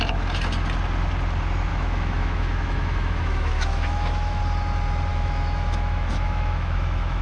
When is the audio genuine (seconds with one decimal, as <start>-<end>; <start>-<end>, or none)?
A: 0.0-1.7; 4.4-5.1